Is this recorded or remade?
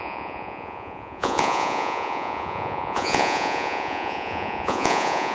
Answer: remade